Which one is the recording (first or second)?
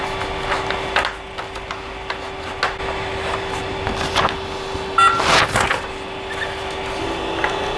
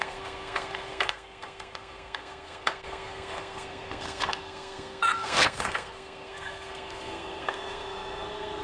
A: first